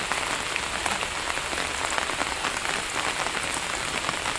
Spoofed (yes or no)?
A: no